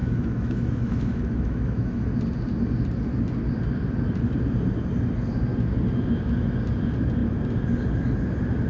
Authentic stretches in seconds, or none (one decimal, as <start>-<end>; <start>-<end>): 2.0-8.7